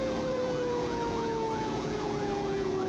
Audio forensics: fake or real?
fake